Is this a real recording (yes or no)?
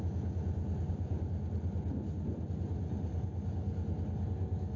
yes